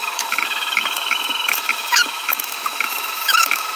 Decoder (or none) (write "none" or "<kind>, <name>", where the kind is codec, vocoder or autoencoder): autoencoder, DAC-VAE